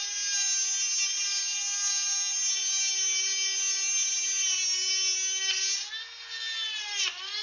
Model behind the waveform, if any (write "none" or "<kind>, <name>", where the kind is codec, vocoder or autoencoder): none